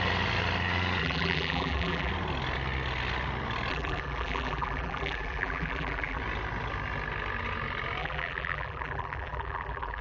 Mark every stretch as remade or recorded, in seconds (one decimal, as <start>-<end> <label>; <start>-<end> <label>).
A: 0.0-1.0 recorded; 1.0-2.1 remade; 2.1-3.7 recorded; 3.7-6.2 remade; 6.2-8.0 recorded; 8.0-10.0 remade